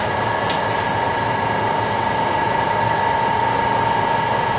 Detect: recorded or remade recorded